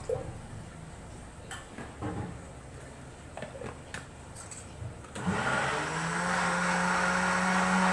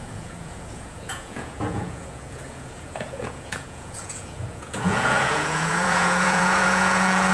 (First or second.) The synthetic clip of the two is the second